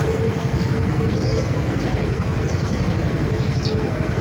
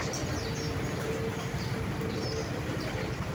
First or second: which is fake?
first